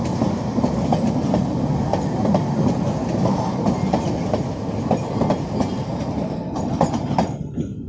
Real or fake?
real